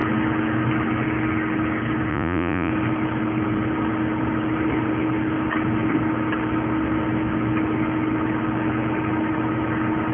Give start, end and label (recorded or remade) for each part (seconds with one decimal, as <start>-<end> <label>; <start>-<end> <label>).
0.0-2.1 recorded; 2.1-2.7 remade; 2.7-10.1 recorded